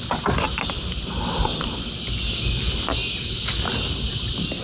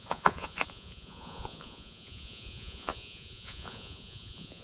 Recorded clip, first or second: first